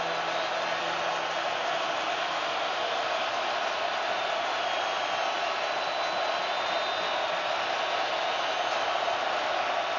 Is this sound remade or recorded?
recorded